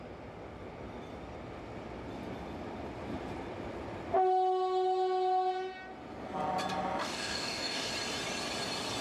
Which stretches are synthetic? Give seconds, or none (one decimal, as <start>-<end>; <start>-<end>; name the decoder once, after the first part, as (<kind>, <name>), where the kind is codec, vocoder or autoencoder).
7.0-7.9 (codec, DAC)